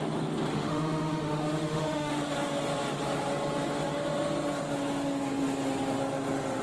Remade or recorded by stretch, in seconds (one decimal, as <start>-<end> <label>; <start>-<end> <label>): 0.0-0.5 recorded; 0.5-2.1 remade; 2.1-6.6 recorded